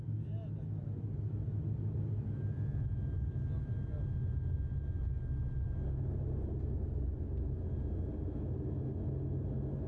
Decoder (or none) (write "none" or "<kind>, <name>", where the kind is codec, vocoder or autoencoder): none